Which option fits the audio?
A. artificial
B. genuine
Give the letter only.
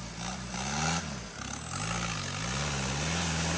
B